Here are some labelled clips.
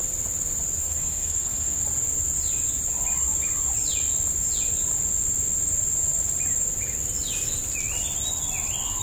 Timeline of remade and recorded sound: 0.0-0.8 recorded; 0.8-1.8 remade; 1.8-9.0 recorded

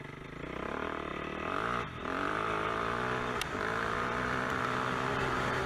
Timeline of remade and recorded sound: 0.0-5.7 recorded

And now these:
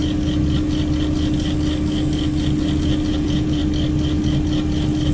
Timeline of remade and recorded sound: 0.0-3.1 recorded; 3.1-3.6 remade; 3.6-5.1 recorded

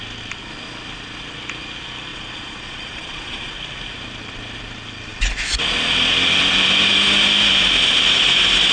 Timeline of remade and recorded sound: 0.0-2.1 recorded; 2.1-3.5 remade; 3.5-8.7 recorded